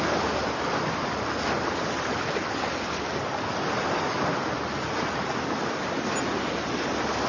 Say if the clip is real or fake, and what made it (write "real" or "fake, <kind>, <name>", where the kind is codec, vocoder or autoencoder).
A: real